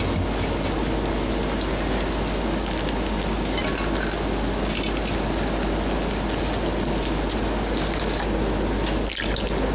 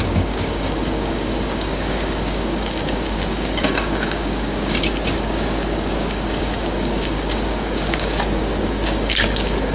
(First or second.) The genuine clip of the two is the first